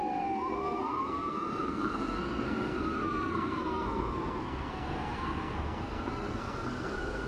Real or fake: fake